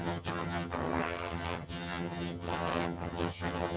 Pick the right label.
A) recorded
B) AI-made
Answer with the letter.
B